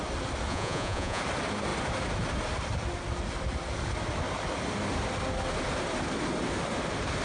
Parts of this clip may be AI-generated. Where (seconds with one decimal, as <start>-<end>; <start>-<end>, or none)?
0.5-1.2